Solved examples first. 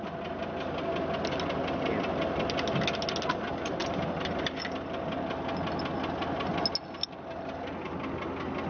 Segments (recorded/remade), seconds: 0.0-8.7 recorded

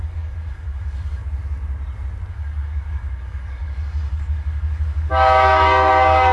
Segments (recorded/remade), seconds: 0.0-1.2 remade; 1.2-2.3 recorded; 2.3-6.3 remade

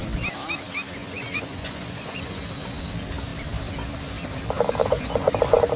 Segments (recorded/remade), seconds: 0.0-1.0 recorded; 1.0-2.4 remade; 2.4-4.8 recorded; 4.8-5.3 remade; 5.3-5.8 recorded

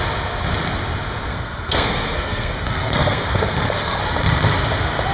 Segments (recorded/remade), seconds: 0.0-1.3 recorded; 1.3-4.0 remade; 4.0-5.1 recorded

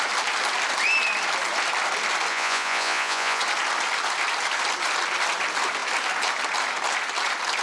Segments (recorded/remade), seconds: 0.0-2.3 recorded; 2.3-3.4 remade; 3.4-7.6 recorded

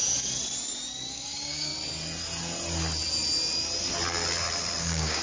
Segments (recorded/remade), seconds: 0.0-1.1 recorded; 1.1-1.7 remade; 1.7-4.8 recorded; 4.8-5.2 remade